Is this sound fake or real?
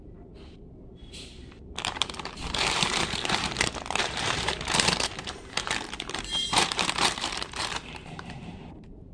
fake